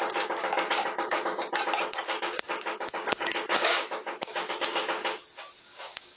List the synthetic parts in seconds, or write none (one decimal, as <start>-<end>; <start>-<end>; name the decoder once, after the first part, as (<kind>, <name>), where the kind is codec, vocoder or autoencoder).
0.0-1.4 (codec, DAC); 2.0-5.0; 5.6-6.2